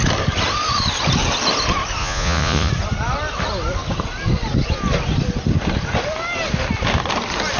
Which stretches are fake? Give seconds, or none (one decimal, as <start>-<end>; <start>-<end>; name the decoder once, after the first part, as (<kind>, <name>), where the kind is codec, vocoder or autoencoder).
2.0-2.7 (vocoder, Vocos)